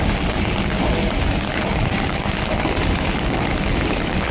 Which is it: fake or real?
real